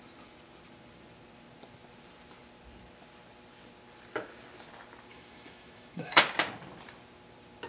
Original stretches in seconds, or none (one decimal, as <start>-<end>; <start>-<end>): 0.0-5.1; 6.2-7.7